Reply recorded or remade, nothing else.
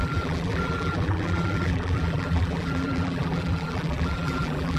remade